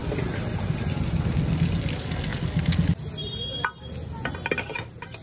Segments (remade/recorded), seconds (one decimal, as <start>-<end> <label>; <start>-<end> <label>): 0.0-5.2 recorded